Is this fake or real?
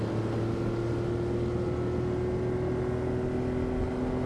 real